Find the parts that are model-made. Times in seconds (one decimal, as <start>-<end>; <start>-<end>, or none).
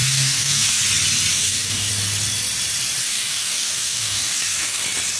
0.0-0.8; 1.3-1.9; 3.0-4.8